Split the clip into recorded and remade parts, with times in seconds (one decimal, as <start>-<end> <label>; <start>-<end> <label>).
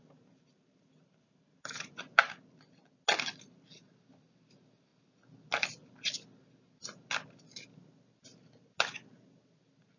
0.0-2.5 remade; 2.5-10.0 recorded